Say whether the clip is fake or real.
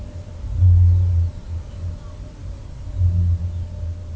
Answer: real